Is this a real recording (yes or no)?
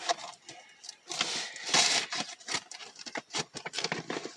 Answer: yes